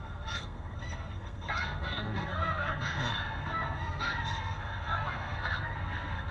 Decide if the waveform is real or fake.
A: fake